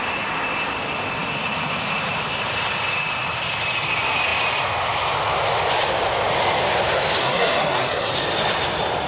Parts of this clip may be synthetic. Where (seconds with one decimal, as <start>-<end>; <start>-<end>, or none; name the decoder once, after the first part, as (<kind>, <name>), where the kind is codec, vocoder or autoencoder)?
7.2-8.1 (codec, SNAC)